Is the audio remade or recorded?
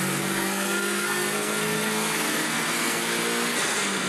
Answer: remade